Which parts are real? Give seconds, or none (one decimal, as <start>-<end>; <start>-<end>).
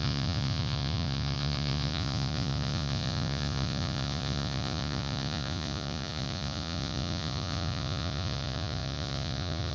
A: none